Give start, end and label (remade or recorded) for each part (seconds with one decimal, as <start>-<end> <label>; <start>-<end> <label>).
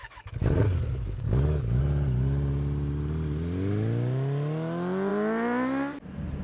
0.0-1.8 remade; 1.8-6.4 recorded